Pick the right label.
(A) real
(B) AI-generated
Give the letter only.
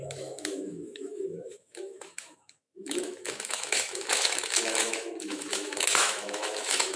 B